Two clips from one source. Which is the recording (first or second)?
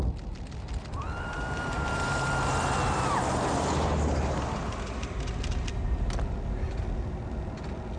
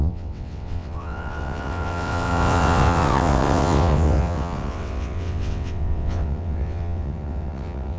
first